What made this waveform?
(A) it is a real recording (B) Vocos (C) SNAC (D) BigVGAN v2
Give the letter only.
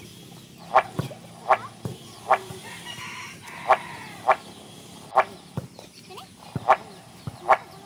A